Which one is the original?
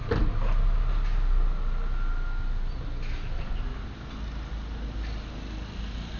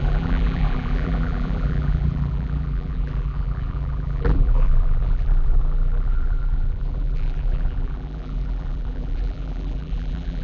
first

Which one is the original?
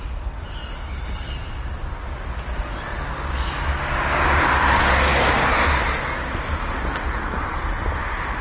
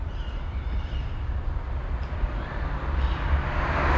first